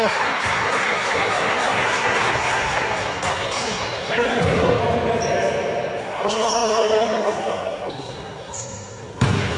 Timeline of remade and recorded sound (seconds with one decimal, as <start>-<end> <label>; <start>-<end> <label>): 0.0-4.8 remade; 4.8-6.0 recorded; 6.0-9.6 remade